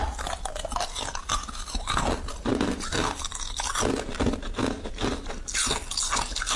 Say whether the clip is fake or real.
real